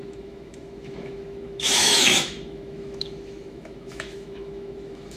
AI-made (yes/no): yes